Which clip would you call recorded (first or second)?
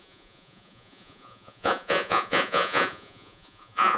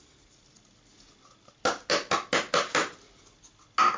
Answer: second